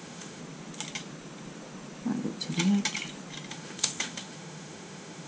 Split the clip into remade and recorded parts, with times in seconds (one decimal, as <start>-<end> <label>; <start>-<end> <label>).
0.0-0.4 remade; 0.4-3.5 recorded; 3.5-5.3 remade